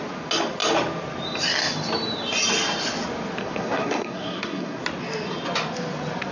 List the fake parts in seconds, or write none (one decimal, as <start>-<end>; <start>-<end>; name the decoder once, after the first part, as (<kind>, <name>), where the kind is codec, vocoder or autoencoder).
3.4-4.8 (codec, SNAC)